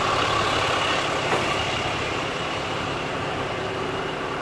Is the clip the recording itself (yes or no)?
yes